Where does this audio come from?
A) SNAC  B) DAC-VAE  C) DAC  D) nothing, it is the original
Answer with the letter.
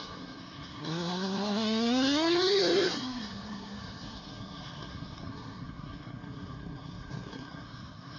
A